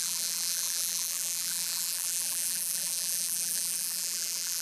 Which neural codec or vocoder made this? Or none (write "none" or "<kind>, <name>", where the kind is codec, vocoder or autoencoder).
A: vocoder, BigVGAN v2